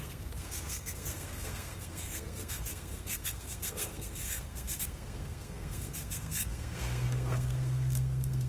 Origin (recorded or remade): remade